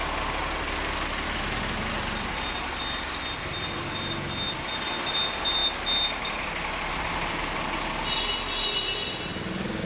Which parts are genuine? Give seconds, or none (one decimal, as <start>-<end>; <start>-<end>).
0.0-9.9